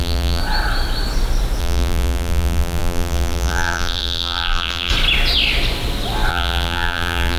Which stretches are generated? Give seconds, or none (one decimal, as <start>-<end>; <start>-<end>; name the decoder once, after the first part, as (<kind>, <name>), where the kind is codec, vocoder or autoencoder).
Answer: 0.0-0.4 (vocoder, BigVGAN v2); 1.6-4.9; 6.3-7.4

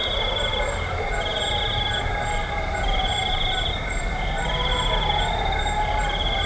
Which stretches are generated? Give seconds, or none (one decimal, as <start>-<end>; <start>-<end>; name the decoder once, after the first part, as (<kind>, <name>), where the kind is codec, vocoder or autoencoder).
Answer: 0.0-6.5 (vocoder, BigVGAN v2)